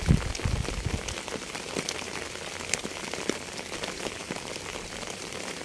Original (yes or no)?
yes